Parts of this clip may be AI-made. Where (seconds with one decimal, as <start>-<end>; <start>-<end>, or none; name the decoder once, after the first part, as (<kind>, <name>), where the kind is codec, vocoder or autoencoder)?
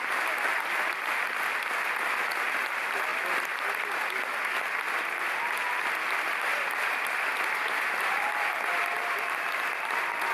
none